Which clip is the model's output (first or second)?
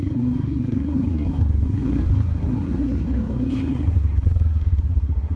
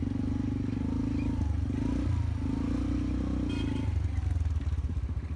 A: first